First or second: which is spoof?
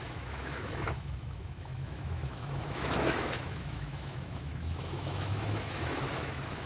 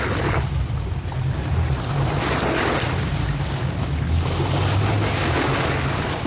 first